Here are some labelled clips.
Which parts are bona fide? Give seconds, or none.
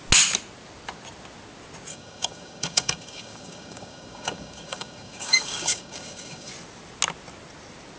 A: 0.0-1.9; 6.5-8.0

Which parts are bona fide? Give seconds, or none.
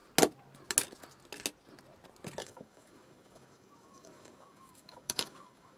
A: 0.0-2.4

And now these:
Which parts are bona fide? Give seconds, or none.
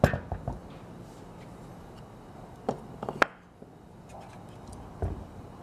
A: 0.0-5.6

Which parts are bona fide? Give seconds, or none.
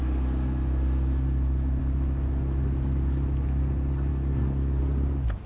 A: 0.0-4.1; 4.8-5.5